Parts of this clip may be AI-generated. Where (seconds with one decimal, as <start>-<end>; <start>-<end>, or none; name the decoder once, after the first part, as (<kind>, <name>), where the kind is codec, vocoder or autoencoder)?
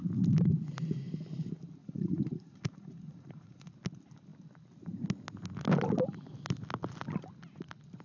1.8-3.7 (vocoder, Vocos)